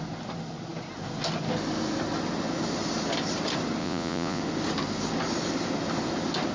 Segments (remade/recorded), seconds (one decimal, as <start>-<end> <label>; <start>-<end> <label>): 0.0-3.8 recorded; 3.8-4.4 remade; 4.4-6.5 recorded